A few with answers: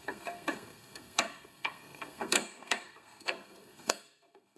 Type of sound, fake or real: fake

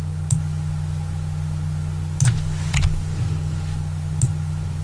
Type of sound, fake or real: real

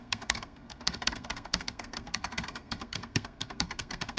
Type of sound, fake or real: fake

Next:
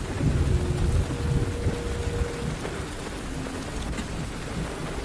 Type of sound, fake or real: real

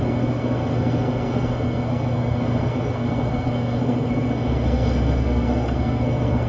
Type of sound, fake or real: fake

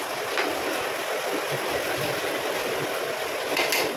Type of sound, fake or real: real